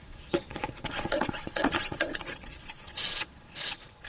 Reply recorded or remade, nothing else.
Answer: remade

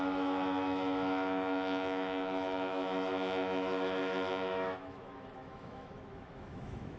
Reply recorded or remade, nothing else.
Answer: remade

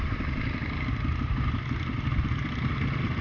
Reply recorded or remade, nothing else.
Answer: recorded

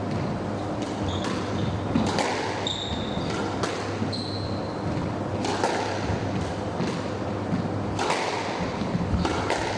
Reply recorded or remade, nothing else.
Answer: recorded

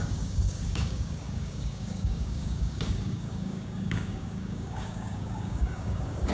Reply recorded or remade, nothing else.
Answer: remade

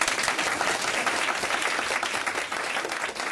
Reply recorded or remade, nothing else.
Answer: recorded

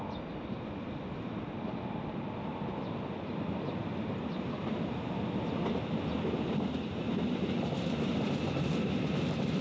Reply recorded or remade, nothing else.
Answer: recorded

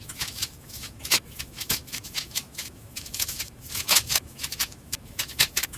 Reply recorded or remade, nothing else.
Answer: remade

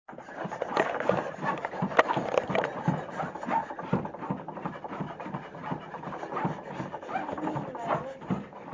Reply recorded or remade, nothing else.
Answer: recorded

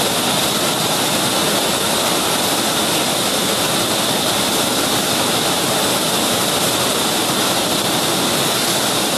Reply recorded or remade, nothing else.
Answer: recorded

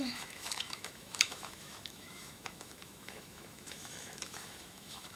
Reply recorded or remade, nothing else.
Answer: remade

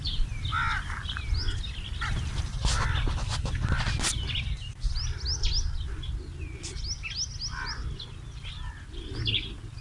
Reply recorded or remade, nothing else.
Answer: recorded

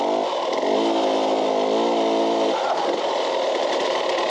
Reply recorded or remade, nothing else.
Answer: recorded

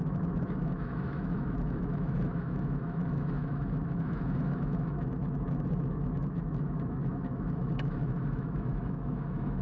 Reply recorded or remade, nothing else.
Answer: remade